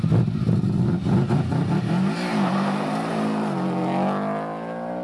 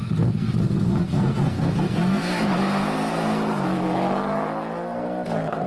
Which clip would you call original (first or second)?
first